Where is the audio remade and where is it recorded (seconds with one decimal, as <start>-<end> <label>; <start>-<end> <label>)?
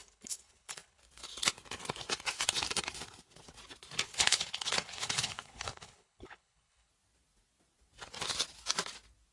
0.0-1.0 remade; 1.0-4.1 recorded; 4.1-6.9 remade; 6.9-9.3 recorded